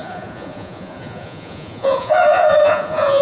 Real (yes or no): no